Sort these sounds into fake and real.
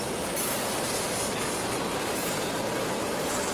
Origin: real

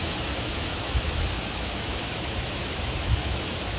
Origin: fake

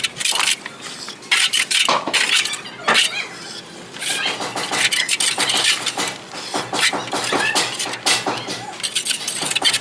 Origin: real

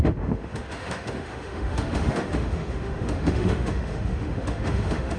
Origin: fake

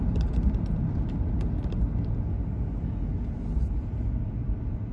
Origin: real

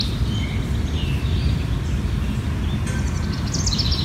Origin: real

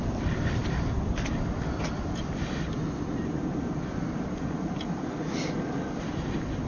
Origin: real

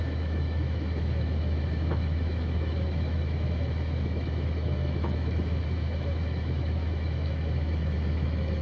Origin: fake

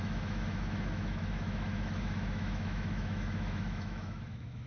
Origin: fake